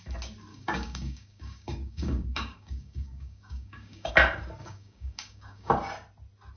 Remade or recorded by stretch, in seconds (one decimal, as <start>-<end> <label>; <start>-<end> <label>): 0.0-0.5 recorded; 0.5-4.1 remade; 4.1-4.6 recorded; 4.6-5.7 remade; 5.7-6.6 recorded